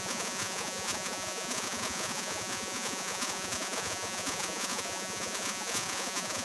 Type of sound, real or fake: fake